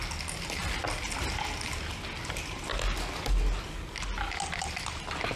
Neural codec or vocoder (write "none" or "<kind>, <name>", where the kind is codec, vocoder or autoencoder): none